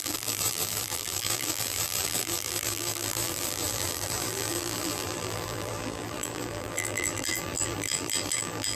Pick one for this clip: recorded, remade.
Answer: remade